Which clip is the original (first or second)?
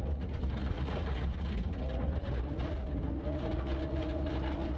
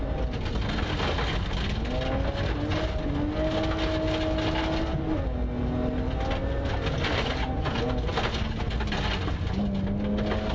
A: second